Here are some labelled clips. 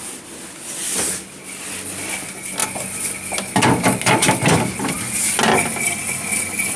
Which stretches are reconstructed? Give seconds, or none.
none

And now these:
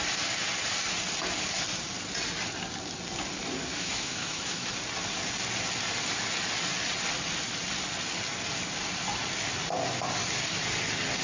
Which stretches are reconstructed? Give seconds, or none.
3.7-4.7

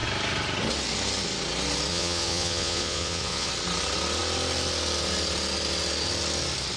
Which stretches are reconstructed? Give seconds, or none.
1.9-3.5

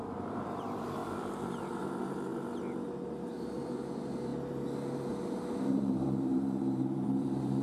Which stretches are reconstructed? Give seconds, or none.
0.0-2.3; 3.4-4.3; 5.7-7.6